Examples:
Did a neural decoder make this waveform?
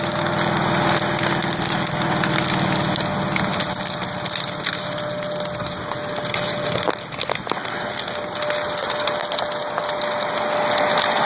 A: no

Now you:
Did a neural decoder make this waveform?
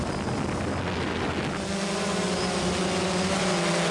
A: no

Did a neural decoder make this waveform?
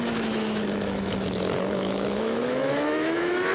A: yes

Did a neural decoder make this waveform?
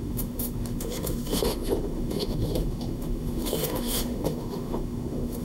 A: yes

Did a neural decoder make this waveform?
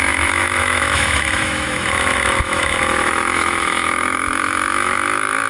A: yes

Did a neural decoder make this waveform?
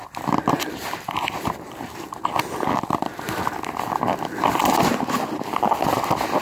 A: no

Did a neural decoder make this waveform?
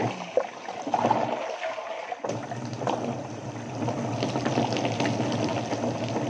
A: no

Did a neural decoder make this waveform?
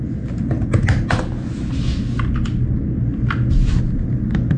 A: no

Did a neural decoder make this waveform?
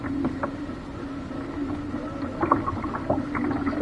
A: no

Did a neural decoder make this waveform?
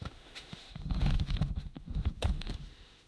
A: yes